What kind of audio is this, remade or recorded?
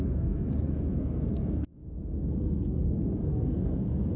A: remade